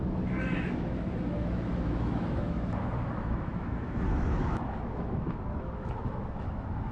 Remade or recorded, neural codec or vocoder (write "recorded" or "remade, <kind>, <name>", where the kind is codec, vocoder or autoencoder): remade, autoencoder, DAC-VAE